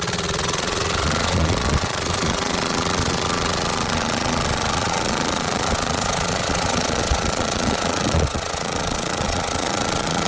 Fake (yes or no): yes